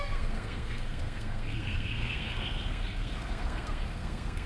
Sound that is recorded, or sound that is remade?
remade